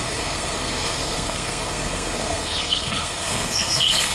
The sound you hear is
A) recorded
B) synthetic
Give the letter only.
B